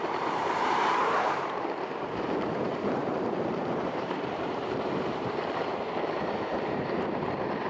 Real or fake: fake